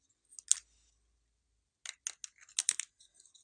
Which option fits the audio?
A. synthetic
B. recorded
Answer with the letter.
B